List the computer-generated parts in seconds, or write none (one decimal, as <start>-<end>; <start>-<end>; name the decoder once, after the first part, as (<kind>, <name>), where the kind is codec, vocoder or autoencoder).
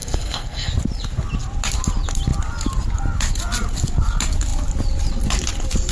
0.0-0.7 (codec, SNAC)